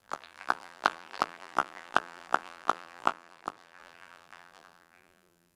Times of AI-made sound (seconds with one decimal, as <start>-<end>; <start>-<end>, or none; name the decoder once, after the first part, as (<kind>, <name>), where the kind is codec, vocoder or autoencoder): 0.0-5.6 (vocoder, BigVGAN v2)